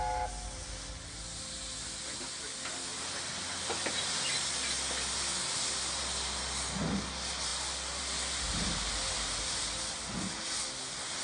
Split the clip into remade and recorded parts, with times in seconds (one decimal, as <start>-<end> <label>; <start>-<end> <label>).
0.0-11.2 recorded